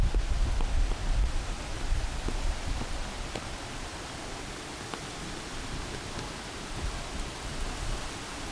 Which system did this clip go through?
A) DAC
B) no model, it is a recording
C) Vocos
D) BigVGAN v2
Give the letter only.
B